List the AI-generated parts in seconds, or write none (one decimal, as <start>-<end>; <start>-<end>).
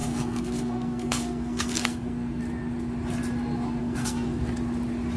0.0-2.4; 3.8-4.4